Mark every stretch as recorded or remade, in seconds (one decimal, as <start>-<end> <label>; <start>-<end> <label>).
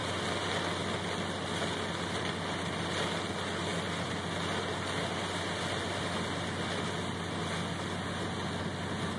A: 0.0-9.2 recorded